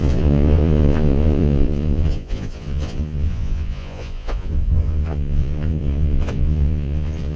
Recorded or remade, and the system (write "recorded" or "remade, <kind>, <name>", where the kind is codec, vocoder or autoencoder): remade, vocoder, Vocos